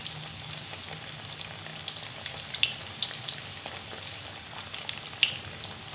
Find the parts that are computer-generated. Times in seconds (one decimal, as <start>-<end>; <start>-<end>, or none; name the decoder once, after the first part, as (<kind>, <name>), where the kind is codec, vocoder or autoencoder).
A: none